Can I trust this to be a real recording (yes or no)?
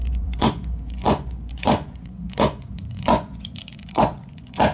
no